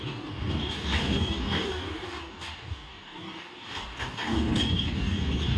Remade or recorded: remade